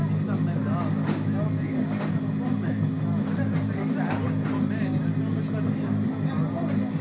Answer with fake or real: real